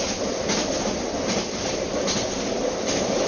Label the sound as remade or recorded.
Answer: recorded